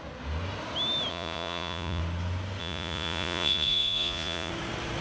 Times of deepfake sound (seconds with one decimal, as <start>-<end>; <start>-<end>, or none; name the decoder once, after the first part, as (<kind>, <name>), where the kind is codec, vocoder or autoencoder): 1.1-2.0 (vocoder, Vocos); 2.6-4.5